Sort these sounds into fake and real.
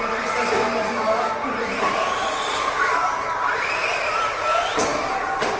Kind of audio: real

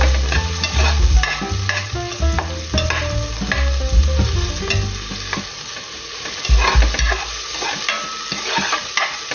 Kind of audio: real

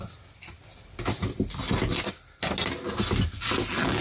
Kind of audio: real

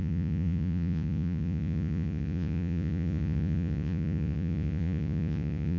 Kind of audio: fake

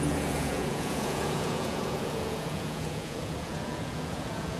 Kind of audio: fake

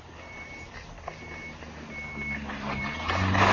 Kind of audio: real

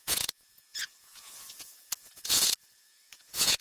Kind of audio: fake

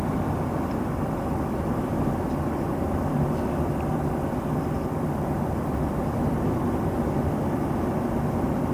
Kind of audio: real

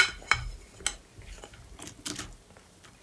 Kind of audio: real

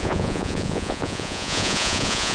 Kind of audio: fake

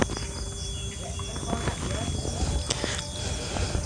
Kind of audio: real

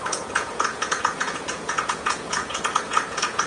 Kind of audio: fake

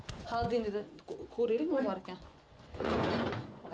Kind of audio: fake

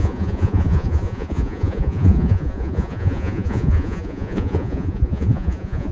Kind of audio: fake